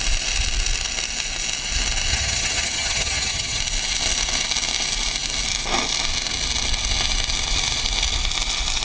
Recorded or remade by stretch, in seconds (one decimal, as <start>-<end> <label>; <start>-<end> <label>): 0.0-2.1 recorded; 2.1-3.6 remade; 3.6-8.8 recorded